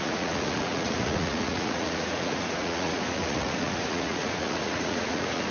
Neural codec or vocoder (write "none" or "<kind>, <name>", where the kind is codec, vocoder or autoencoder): vocoder, Vocos